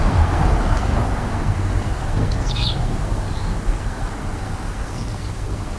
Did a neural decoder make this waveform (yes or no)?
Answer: yes